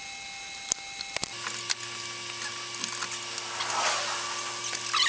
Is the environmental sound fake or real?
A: real